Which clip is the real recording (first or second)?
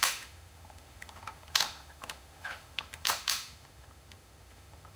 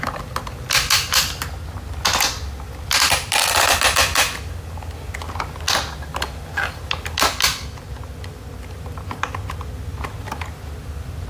second